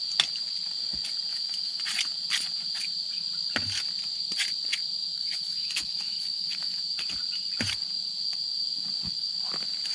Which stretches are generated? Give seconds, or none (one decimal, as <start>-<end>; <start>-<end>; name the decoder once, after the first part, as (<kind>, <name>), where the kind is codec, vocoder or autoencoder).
1.3-1.8 (autoencoder, DAC-VAE); 5.1-6.8